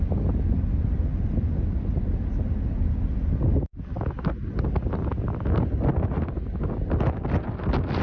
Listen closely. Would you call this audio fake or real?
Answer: real